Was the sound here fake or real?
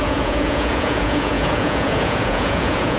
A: fake